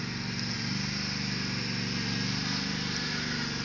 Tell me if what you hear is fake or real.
real